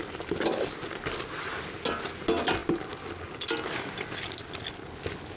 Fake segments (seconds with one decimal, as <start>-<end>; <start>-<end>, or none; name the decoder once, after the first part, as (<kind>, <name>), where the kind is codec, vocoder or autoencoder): none